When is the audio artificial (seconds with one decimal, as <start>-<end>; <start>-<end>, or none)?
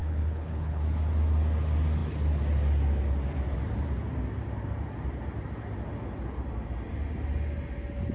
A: 0.0-0.8